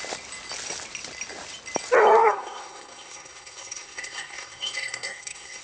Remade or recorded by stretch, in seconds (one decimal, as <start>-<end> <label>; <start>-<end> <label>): 0.0-2.2 recorded; 2.2-5.6 remade